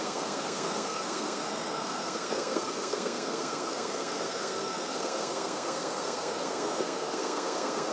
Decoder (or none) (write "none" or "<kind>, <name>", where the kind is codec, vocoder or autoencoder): codec, SNAC